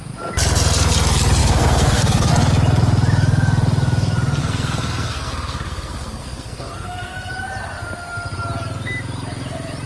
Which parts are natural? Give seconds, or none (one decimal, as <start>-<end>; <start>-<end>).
0.0-1.4; 2.3-4.4; 7.3-9.9